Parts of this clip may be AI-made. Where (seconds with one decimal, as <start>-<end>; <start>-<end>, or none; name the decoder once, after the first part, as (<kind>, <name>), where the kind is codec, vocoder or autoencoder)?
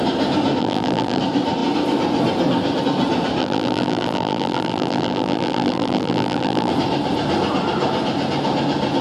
0.6-1.2 (vocoder, BigVGAN v2); 3.4-6.7